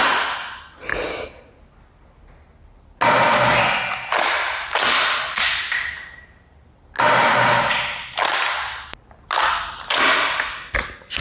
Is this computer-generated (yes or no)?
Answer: no